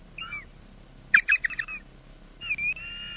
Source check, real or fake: real